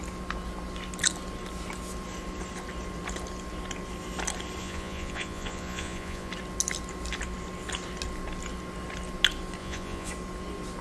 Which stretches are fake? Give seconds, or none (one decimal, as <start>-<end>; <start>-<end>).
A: 4.6-6.3; 9.6-10.1